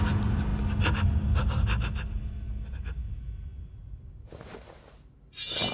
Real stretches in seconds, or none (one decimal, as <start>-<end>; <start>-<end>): 0.0-5.7